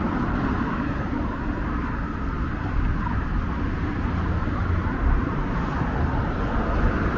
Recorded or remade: recorded